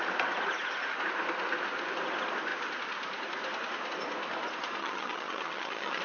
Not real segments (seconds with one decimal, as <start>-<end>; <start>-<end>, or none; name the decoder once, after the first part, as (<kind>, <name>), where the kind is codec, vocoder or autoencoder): 4.8-6.0 (vocoder, HiFi-GAN)